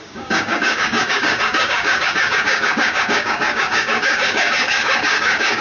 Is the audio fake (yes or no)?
yes